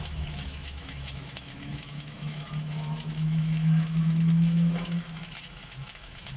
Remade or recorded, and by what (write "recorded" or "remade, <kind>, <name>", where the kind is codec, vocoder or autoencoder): remade, autoencoder, DAC-VAE